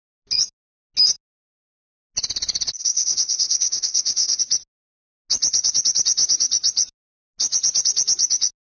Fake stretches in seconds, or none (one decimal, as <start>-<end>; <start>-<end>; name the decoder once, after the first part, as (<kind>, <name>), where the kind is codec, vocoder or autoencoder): 2.8-4.4 (codec, ZipCodec)